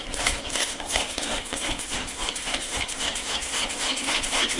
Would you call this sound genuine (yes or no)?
no